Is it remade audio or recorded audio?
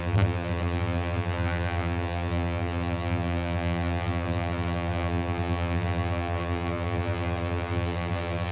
remade